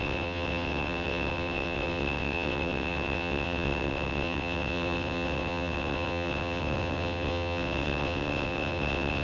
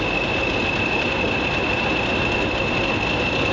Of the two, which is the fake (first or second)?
first